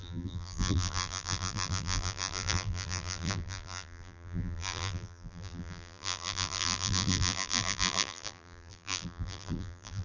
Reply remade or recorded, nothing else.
remade